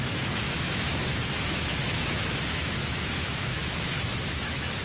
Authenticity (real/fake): fake